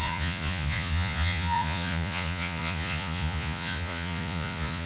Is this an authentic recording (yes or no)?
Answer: no